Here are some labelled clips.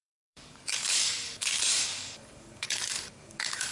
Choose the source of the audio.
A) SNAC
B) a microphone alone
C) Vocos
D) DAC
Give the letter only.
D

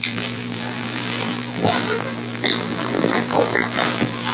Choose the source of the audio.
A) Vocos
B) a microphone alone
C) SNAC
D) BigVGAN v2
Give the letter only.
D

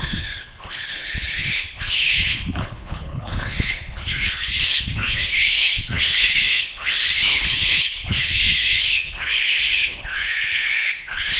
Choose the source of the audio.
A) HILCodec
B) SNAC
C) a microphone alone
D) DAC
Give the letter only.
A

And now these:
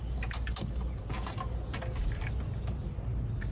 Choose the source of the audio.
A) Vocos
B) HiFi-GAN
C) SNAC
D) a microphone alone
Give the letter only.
D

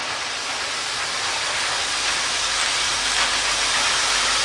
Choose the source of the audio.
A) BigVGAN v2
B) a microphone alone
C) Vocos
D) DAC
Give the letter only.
B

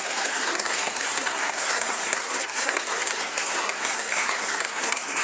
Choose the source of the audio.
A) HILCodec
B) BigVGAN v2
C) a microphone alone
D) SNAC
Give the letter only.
D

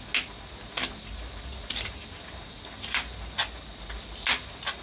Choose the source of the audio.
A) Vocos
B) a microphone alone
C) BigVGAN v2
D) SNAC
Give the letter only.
B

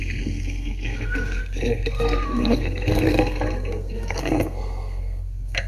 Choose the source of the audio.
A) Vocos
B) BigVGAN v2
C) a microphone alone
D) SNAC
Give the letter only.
D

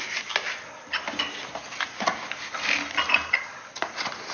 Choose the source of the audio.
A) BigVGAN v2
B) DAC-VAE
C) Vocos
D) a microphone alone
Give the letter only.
D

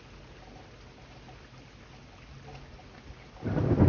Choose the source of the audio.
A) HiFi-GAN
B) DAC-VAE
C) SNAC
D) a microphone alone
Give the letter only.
D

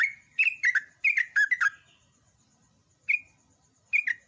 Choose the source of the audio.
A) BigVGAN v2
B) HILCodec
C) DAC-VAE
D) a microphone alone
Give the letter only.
D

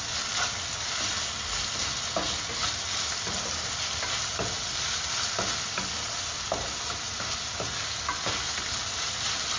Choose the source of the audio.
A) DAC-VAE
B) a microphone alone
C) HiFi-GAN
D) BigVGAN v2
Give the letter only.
B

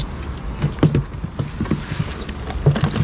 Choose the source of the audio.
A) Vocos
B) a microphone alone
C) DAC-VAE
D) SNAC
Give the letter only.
B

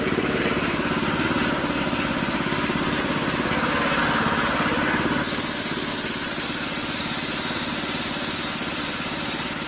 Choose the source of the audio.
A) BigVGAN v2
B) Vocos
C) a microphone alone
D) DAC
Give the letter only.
C